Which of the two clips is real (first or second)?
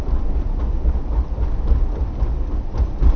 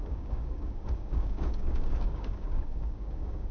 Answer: first